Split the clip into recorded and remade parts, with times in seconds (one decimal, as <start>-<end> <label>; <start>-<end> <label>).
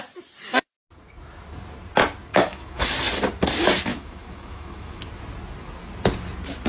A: 0.0-2.3 recorded; 2.3-2.9 remade; 2.9-3.9 recorded; 3.9-5.0 remade; 5.0-6.7 recorded